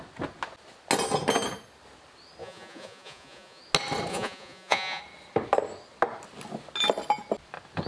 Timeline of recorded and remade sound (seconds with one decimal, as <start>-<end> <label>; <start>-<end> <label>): 0.0-2.4 recorded; 2.4-3.6 remade; 3.6-4.1 recorded; 4.1-5.0 remade; 5.0-7.9 recorded